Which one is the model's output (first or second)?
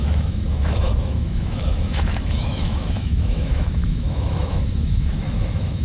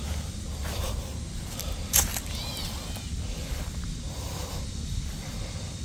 first